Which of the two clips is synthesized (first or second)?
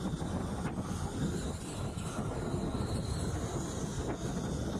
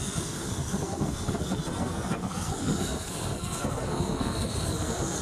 second